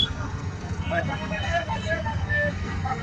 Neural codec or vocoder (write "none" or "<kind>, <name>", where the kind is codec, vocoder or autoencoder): codec, SNAC